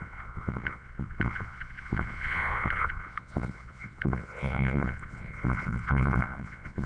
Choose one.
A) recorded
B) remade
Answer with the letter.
B